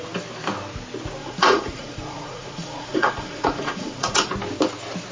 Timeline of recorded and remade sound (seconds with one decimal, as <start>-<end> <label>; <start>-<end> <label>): 0.0-1.2 recorded; 1.2-4.3 remade; 4.3-5.1 recorded